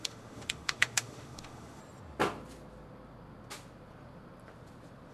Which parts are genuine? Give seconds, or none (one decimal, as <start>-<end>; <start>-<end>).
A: 1.8-5.1